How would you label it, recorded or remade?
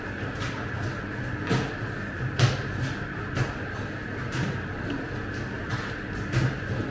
recorded